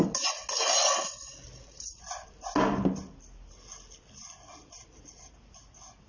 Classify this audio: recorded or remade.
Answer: recorded